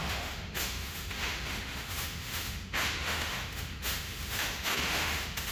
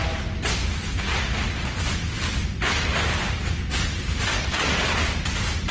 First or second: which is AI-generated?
first